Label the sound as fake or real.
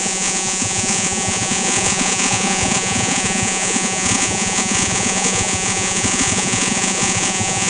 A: fake